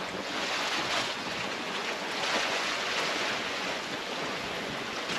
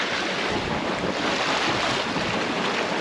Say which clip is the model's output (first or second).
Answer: first